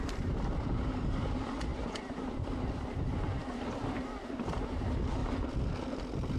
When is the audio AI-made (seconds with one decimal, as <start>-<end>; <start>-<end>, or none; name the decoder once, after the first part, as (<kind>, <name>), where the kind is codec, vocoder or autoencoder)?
0.0-6.4 (vocoder, BigVGAN v2)